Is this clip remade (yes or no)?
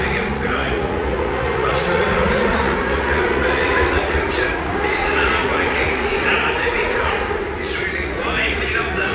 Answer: yes